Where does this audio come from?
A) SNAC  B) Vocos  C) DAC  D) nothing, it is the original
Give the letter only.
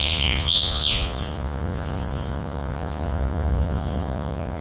B